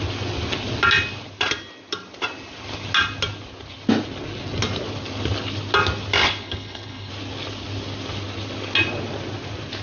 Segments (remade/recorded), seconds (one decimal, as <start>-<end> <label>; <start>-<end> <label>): 0.0-6.2 recorded; 6.2-7.1 remade; 7.1-9.8 recorded